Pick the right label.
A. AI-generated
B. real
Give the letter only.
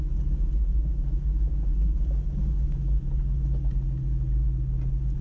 B